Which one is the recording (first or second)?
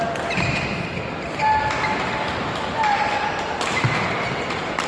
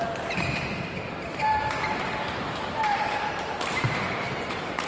first